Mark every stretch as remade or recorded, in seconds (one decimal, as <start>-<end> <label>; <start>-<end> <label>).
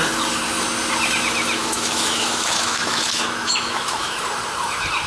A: 0.0-1.6 recorded; 1.6-4.2 remade; 4.2-5.1 recorded